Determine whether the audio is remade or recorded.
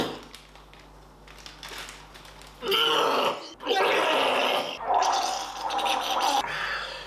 recorded